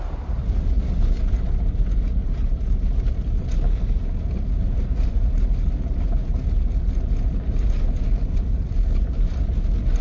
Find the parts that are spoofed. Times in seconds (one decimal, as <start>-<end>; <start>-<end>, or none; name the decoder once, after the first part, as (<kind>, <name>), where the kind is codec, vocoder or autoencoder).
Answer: none